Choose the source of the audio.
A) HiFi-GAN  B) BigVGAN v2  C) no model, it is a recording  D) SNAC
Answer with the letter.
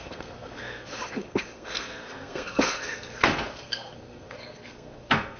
D